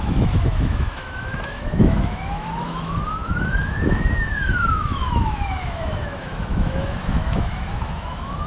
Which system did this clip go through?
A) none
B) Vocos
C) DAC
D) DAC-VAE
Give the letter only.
D